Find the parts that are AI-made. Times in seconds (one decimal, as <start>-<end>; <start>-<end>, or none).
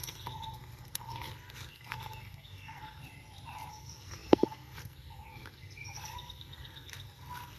0.0-3.0; 3.7-7.6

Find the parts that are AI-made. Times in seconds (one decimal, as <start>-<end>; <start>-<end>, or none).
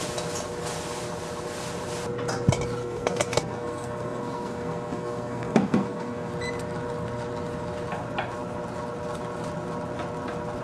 2.8-6.3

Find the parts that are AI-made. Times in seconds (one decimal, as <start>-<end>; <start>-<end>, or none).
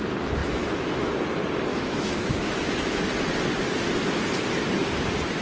0.4-1.1; 1.7-3.0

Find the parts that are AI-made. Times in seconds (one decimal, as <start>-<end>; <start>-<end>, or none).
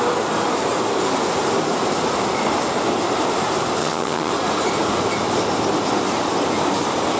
3.8-4.3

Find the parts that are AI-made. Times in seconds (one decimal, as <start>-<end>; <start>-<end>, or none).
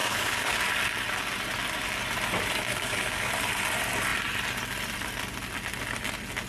0.0-0.7; 2.7-3.3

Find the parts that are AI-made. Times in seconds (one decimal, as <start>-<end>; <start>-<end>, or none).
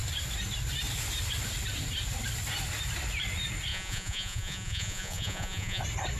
3.7-5.8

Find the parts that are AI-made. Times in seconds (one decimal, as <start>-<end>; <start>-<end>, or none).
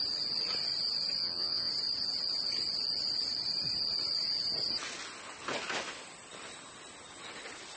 1.2-1.7